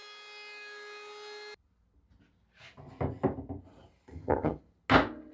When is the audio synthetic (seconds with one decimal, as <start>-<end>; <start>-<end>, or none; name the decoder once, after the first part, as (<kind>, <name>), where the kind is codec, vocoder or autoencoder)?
4.1-4.6 (vocoder, HiFi-GAN)